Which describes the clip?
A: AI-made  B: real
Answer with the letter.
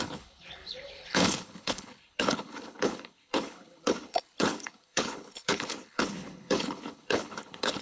A